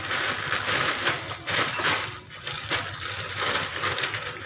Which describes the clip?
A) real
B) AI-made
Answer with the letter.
A